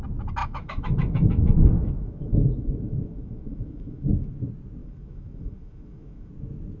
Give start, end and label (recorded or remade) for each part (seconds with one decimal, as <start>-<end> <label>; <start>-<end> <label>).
0.0-0.4 recorded; 0.4-4.1 remade; 4.1-4.8 recorded; 4.8-6.3 remade; 6.3-6.8 recorded

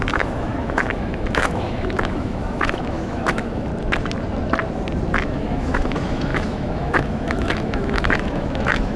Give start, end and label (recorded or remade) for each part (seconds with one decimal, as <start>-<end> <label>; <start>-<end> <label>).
0.0-3.7 remade; 3.7-5.2 recorded; 5.2-9.0 remade

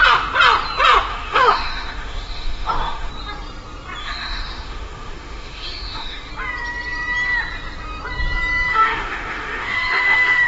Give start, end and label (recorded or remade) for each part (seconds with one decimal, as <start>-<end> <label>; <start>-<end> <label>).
0.0-1.1 recorded; 1.1-3.1 remade; 3.1-4.0 recorded; 4.0-6.3 remade; 6.3-8.7 recorded; 8.7-10.5 remade

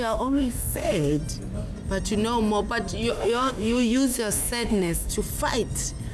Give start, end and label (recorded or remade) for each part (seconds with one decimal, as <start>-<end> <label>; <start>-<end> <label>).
0.0-1.2 remade; 1.2-3.1 recorded; 3.1-5.1 remade; 5.1-6.1 recorded

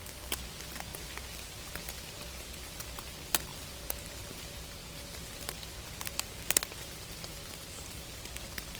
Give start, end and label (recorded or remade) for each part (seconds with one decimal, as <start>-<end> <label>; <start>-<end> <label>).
0.0-8.8 recorded

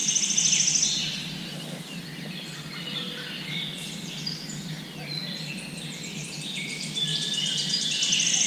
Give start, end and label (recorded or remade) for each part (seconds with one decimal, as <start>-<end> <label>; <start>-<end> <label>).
0.0-8.5 recorded

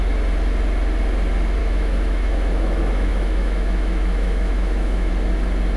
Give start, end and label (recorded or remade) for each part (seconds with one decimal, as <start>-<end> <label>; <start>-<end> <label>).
0.0-1.6 recorded; 1.6-5.1 remade; 5.1-5.8 recorded